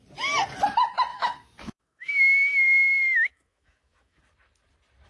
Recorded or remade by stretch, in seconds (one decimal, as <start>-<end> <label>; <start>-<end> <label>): 0.0-1.1 recorded; 1.1-4.2 remade; 4.2-5.1 recorded